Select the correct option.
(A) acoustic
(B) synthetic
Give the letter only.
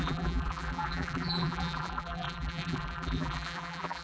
B